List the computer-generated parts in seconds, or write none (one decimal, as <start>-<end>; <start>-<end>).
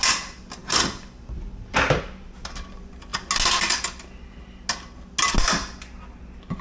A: none